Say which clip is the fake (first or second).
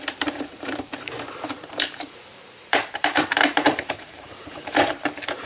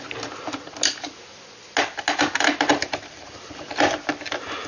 first